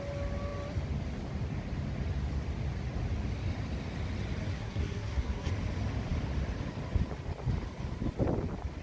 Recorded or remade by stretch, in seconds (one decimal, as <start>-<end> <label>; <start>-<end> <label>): 0.0-4.5 recorded; 4.5-5.5 remade; 5.5-8.8 recorded